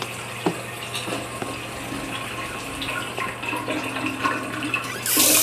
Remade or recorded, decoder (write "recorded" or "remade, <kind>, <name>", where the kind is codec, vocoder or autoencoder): recorded